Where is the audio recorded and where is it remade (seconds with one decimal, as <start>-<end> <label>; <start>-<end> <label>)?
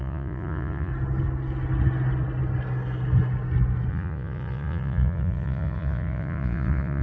0.0-0.9 remade; 0.9-3.9 recorded; 3.9-7.0 remade